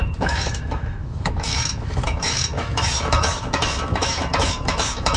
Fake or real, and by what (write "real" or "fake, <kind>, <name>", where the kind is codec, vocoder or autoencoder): fake, autoencoder, DAC-VAE